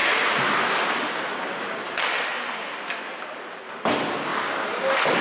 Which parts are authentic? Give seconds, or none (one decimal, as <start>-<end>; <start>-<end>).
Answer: 0.0-5.2